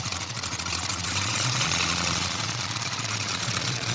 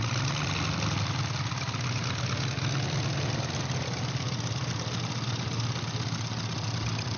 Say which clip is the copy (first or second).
first